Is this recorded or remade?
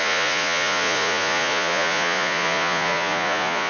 remade